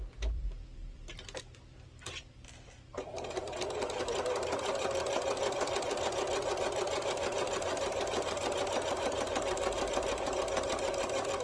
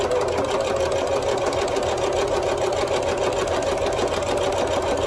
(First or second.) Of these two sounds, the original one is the second